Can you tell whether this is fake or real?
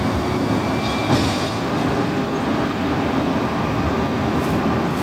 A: real